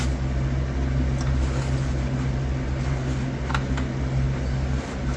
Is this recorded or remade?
recorded